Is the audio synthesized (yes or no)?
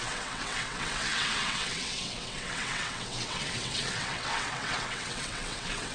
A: yes